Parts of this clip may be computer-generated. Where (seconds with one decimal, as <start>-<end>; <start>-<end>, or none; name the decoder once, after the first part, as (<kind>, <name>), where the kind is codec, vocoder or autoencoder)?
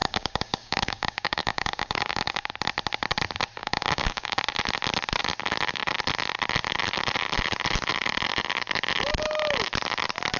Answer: 0.0-2.5 (codec, DAC); 3.6-4.4